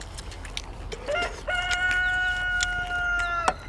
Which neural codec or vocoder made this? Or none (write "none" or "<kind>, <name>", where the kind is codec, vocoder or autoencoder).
none